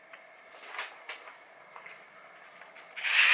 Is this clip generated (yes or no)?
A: no